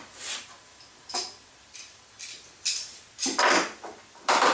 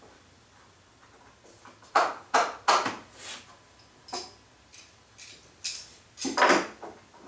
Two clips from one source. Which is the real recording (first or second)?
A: second